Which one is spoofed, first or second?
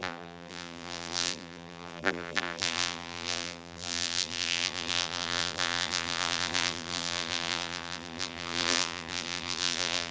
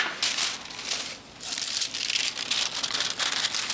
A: first